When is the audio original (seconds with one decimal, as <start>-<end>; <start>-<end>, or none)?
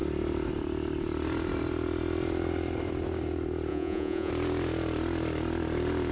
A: 0.0-3.7; 4.3-6.1